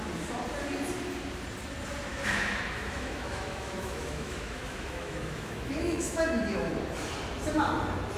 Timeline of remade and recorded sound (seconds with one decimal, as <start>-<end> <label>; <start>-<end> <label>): 0.0-2.1 recorded; 2.1-6.7 remade; 6.7-8.2 recorded